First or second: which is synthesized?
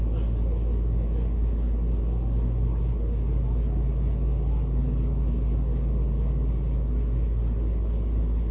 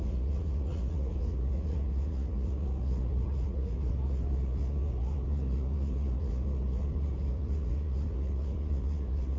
second